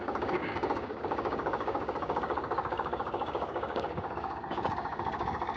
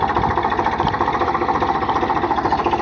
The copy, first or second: first